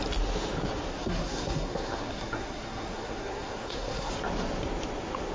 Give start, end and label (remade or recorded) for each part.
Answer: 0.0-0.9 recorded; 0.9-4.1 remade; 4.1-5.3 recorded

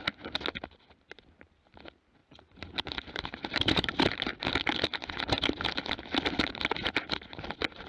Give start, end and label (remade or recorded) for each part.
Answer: 0.0-2.2 recorded; 2.2-4.0 remade; 4.0-7.9 recorded